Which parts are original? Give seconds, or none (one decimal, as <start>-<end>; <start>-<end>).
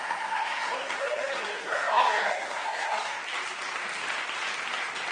3.2-5.1